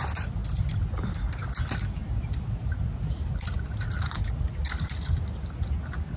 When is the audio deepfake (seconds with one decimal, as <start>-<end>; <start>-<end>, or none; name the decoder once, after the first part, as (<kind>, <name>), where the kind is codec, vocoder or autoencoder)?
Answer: none